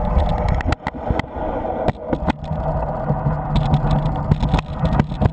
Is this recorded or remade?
recorded